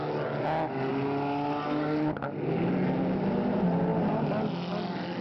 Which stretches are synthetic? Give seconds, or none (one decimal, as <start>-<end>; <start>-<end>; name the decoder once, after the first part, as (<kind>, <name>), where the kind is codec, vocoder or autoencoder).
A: none